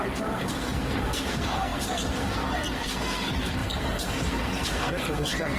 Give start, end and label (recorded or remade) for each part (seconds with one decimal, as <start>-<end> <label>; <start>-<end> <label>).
0.0-5.6 remade